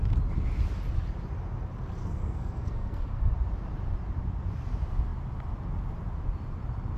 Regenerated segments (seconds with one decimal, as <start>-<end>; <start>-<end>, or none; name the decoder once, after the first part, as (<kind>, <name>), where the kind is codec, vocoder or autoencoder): 2.0-3.3 (codec, SNAC)

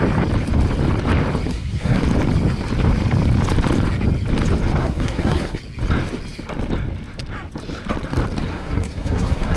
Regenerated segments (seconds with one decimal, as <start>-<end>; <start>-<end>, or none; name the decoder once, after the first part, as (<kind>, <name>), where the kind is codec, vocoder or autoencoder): 1.5-2.0 (codec, SNAC); 4.8-5.6; 8.5-9.6